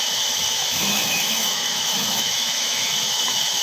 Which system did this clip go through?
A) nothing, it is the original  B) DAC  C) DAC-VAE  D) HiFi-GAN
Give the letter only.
C